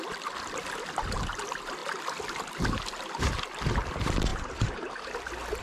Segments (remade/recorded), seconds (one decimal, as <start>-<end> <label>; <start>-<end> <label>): 0.0-4.3 recorded; 4.3-4.8 remade; 4.8-5.6 recorded